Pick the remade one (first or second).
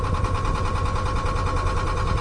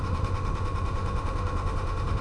second